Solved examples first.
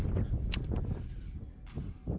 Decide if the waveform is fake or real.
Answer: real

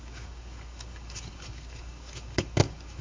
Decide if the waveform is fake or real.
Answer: fake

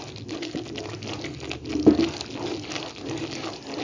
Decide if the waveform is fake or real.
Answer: real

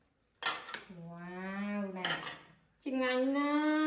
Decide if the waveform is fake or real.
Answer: real